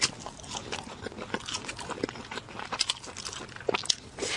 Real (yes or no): yes